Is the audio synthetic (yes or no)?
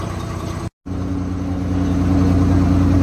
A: no